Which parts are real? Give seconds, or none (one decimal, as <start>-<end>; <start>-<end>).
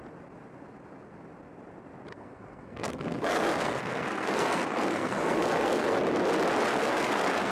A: 0.0-2.1; 6.0-6.7